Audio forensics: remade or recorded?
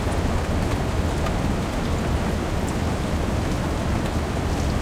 recorded